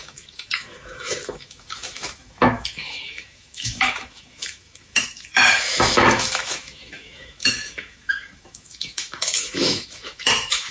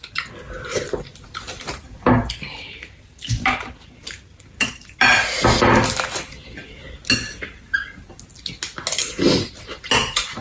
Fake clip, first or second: first